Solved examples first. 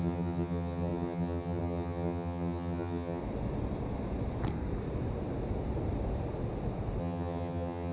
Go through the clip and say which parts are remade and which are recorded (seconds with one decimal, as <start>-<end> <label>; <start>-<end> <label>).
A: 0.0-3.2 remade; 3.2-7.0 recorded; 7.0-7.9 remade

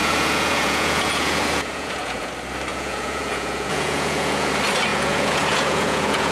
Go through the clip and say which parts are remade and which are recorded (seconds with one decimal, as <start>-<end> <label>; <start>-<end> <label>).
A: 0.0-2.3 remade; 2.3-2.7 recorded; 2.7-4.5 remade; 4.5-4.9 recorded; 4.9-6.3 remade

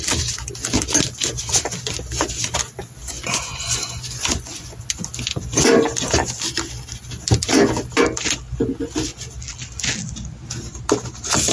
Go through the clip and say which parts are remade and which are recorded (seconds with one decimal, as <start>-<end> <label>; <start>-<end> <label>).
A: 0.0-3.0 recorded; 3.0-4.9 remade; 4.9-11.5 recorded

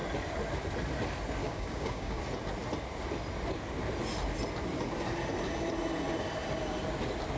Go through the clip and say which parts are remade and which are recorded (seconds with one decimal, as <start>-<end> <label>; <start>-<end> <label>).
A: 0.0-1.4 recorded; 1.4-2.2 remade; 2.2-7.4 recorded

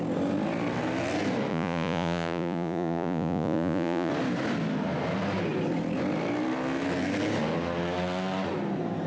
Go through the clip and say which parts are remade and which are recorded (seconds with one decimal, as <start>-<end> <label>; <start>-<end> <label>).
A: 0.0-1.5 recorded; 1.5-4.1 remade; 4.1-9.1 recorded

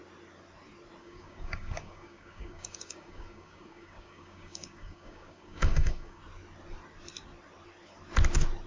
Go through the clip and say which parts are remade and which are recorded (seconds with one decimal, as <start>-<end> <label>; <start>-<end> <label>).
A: 0.0-1.0 recorded; 1.0-6.2 remade; 6.2-8.7 recorded